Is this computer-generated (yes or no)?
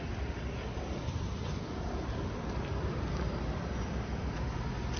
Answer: no